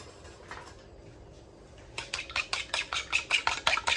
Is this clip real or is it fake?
real